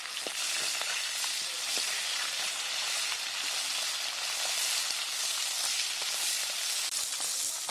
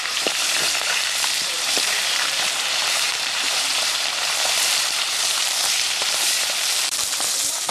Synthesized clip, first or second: second